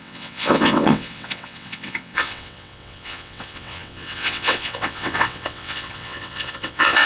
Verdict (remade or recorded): remade